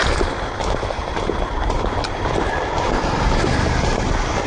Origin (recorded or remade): recorded